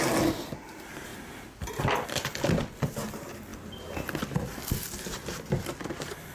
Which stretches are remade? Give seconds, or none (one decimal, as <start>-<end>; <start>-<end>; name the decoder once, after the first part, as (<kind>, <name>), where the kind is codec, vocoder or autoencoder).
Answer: none